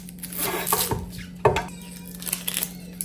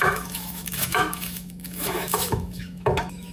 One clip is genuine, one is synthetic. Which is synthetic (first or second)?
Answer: second